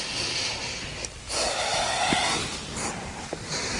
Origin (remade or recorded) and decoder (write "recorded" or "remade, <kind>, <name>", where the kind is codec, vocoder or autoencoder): recorded